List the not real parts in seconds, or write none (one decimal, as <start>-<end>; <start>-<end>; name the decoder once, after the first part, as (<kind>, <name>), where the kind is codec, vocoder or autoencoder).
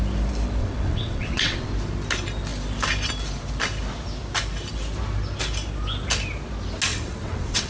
0.6-1.7 (vocoder, WaveNeXt); 6.9-7.7